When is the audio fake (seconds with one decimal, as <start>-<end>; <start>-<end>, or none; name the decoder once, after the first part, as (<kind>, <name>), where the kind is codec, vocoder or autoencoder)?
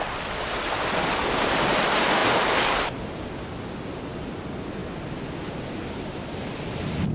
none